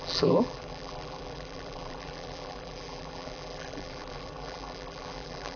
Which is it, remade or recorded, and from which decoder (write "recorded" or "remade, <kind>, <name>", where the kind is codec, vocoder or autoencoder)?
remade, vocoder, BigVGAN v2